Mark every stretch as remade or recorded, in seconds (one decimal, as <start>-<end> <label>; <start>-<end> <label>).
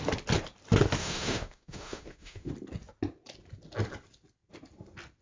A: 0.0-1.0 recorded; 1.0-2.5 remade; 2.5-5.2 recorded